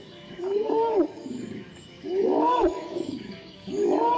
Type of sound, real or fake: fake